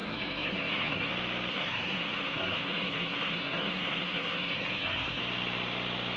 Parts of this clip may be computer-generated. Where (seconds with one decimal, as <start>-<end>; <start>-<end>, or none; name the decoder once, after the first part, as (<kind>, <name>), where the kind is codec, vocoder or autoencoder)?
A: 0.0-1.1 (codec, SNAC); 1.5-5.2